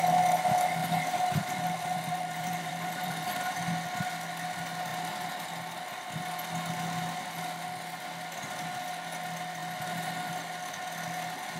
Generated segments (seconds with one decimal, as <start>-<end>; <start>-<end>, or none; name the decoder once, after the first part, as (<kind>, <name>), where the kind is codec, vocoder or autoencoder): 0.8-3.7 (vocoder, BigVGAN v2); 9.6-10.1